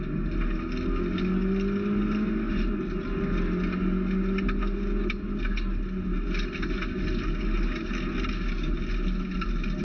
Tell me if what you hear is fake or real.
real